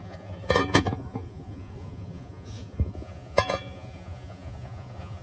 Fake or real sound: fake